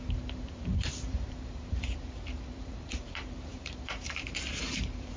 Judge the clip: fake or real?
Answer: fake